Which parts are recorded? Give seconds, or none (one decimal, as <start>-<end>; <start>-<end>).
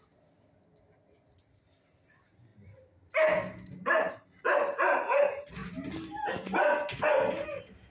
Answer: 0.0-7.9